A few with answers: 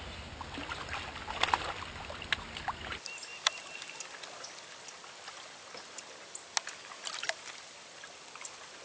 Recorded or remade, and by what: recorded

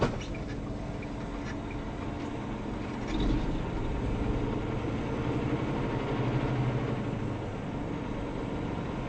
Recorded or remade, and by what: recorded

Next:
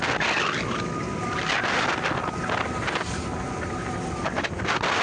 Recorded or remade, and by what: recorded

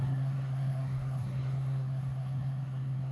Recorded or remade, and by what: remade, codec, SNAC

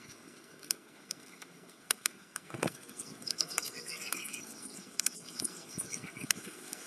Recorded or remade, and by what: remade, codec, SNAC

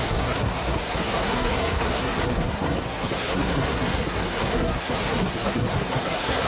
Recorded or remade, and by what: remade, codec, SNAC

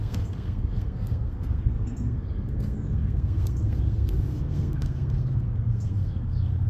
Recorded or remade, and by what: remade, codec, SNAC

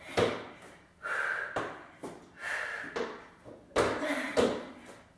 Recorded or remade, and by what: recorded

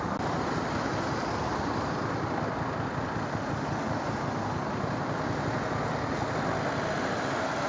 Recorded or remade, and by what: recorded